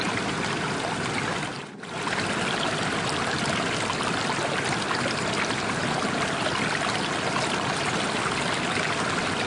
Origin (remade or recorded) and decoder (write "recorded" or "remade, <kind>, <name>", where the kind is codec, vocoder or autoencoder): recorded